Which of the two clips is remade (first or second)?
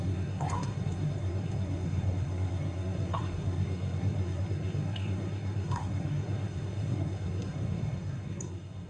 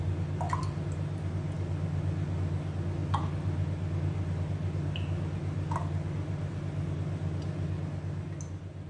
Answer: first